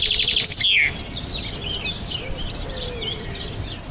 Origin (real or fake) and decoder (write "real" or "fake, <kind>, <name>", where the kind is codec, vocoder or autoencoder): real